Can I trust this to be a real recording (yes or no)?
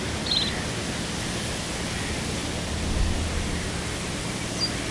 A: yes